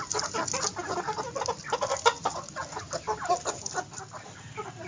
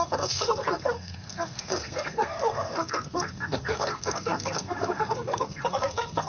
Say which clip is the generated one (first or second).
second